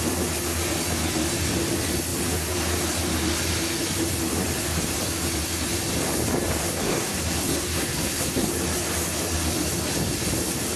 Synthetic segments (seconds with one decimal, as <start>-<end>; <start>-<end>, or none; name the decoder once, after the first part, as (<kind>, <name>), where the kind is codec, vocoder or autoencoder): 6.7-8.5 (codec, SNAC)